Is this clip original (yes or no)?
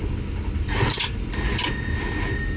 yes